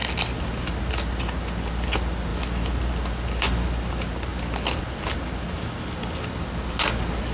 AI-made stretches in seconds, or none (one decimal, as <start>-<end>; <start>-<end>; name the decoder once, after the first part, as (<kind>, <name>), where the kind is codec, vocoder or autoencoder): none